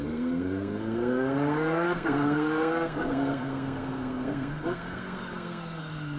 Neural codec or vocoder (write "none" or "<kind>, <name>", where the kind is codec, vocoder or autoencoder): codec, SNAC